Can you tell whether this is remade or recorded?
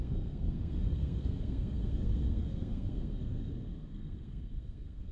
remade